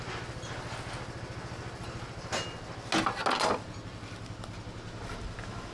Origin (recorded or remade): recorded